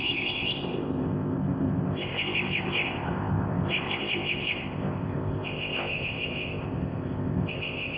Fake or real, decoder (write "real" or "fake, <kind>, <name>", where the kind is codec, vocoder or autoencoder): fake, codec, ZipCodec